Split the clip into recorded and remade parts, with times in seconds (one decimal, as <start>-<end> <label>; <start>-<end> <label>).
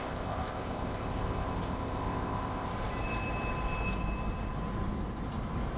0.0-2.7 remade; 2.7-5.8 recorded